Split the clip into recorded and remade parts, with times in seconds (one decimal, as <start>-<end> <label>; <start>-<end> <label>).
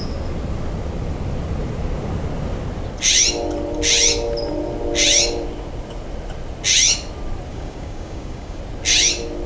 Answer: 0.0-7.5 recorded; 7.5-8.6 remade; 8.6-9.5 recorded